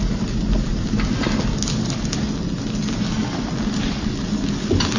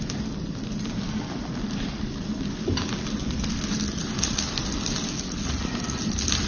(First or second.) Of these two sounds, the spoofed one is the second